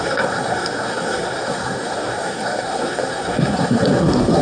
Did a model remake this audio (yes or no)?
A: yes